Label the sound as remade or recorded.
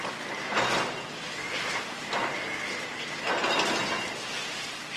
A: recorded